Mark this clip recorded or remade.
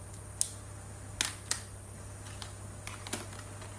recorded